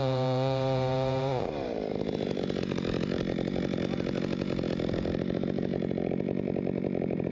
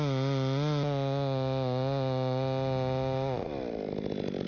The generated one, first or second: first